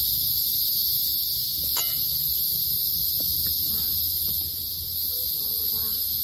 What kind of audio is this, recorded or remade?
recorded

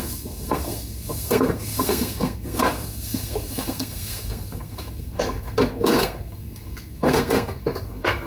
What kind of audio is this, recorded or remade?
remade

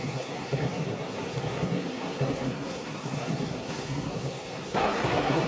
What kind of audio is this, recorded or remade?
remade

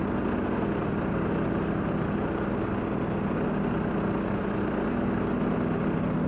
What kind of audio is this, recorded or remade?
recorded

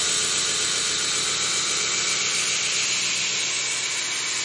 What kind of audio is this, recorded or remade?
recorded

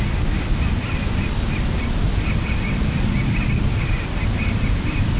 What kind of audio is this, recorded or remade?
recorded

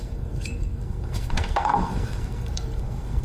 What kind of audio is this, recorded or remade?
remade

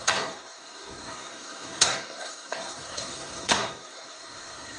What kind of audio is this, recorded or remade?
remade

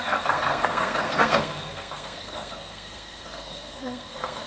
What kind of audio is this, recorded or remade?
remade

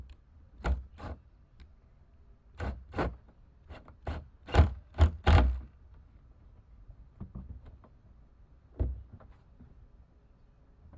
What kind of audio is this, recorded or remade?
recorded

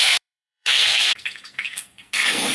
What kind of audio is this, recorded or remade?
remade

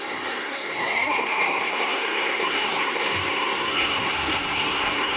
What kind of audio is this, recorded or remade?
remade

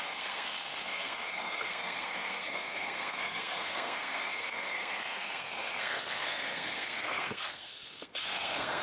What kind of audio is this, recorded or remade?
remade